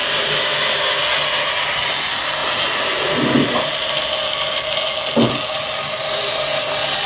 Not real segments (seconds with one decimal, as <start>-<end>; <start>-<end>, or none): none